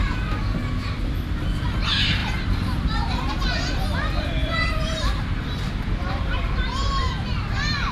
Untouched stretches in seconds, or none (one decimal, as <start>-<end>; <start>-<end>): 0.0-2.2; 3.3-4.4; 7.0-7.9